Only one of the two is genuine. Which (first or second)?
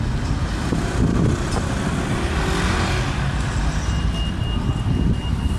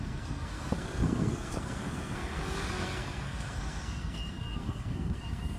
first